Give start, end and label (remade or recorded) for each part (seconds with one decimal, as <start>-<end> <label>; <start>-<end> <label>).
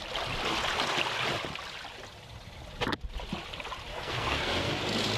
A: 0.0-3.9 recorded; 3.9-4.7 remade; 4.7-5.2 recorded